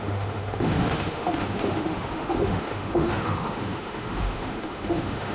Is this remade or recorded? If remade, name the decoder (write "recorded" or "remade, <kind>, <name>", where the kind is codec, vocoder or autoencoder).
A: remade, autoencoder, DAC-VAE